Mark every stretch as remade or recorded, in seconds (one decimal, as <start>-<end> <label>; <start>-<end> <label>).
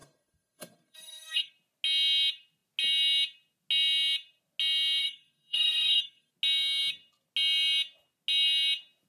0.0-1.5 remade; 1.5-5.0 recorded; 5.0-6.3 remade; 6.3-9.1 recorded